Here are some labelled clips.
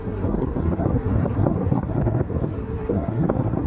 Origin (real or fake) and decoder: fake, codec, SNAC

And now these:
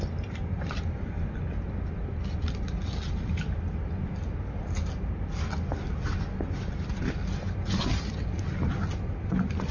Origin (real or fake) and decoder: real